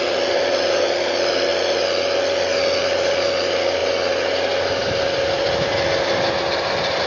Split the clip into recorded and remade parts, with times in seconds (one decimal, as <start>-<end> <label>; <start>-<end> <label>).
0.0-7.1 recorded